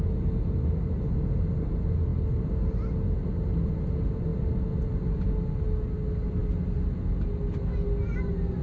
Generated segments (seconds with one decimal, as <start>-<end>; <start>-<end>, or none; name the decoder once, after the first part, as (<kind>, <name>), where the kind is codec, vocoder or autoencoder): none